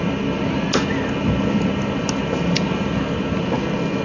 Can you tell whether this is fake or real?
real